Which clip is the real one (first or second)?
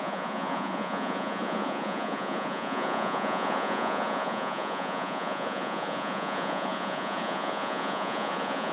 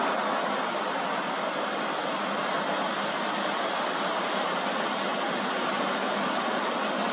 second